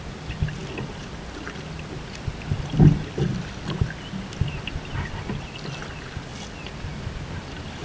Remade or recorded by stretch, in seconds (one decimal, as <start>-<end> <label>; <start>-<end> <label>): 0.0-7.8 recorded